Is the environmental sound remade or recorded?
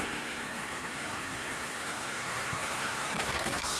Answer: remade